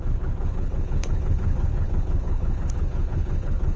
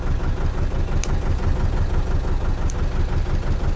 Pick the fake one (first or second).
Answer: first